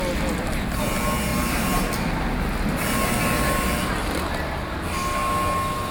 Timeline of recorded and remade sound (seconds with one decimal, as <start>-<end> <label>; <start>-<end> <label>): 0.0-1.3 recorded; 1.3-2.1 remade; 2.1-5.9 recorded